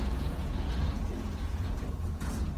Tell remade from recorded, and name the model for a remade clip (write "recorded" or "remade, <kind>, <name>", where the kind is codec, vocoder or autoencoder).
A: remade, vocoder, Vocos